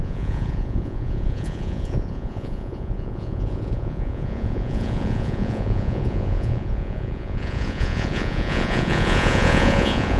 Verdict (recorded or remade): remade